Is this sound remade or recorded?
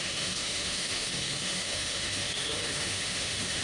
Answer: remade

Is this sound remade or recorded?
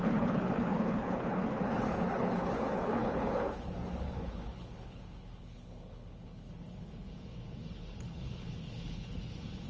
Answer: remade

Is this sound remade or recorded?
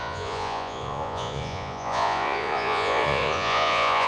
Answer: remade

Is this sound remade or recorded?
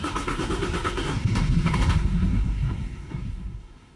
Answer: remade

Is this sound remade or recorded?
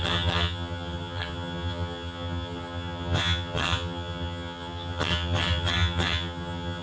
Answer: remade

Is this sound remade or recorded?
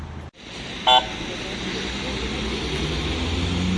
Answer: recorded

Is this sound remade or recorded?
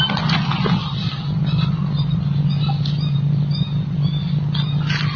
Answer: recorded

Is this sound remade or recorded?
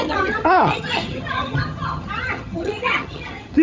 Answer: remade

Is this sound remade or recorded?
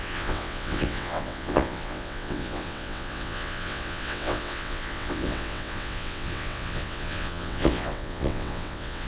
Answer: remade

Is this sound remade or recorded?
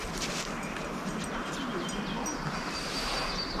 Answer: recorded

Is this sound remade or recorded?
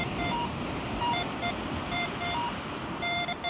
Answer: remade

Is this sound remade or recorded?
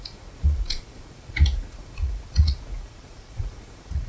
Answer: remade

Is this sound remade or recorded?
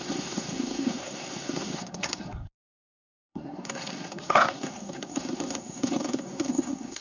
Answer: remade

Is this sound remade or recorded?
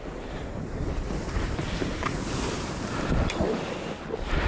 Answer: recorded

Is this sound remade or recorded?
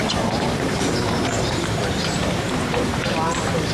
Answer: remade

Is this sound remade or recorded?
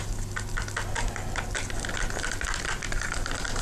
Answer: recorded